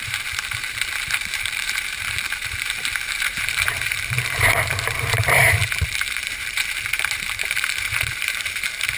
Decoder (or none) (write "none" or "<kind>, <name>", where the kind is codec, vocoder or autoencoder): vocoder, BigVGAN v2